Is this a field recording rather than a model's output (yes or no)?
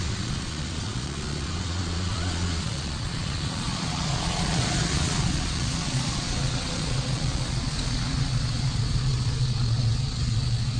no